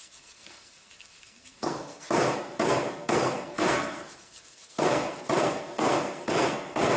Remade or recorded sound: remade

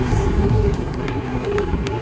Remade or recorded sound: remade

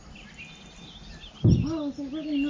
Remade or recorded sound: recorded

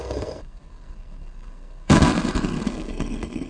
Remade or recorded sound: remade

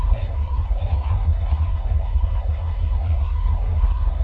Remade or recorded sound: remade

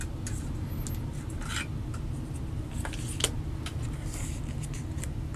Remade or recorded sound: recorded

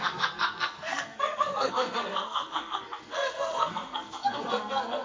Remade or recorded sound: remade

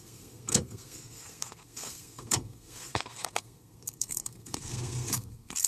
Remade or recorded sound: remade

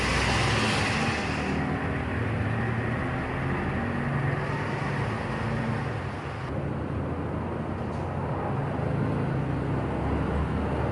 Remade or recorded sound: recorded